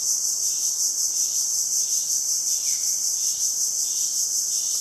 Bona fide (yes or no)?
yes